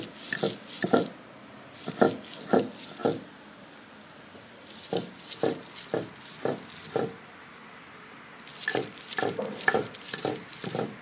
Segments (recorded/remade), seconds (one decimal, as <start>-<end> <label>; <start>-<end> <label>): 0.0-11.0 recorded